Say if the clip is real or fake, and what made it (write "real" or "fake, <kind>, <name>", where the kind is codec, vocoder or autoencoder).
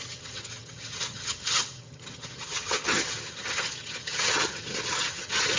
fake, vocoder, HiFi-GAN